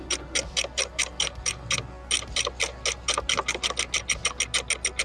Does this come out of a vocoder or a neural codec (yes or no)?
no